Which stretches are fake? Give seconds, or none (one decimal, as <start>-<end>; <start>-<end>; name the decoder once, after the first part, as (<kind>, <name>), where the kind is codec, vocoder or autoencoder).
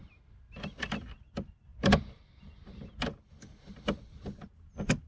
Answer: none